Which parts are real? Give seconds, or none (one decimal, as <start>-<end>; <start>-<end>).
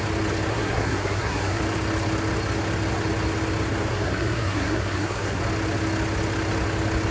0.0-0.5; 1.6-3.9; 5.4-7.1